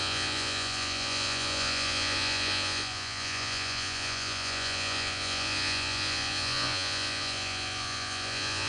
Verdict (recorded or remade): remade